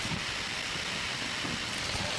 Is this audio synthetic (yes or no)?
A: no